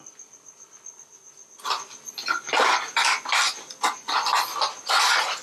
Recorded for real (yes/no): yes